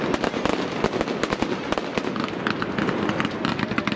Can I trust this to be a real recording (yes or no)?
yes